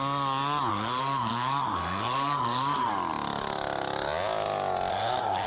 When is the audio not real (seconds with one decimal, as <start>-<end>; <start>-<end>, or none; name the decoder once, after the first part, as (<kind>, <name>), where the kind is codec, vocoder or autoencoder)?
0.7-2.9 (codec, SNAC); 4.9-5.5